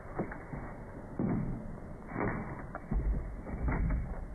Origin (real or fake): real